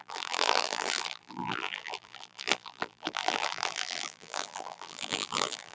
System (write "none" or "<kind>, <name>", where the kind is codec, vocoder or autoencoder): vocoder, BigVGAN v2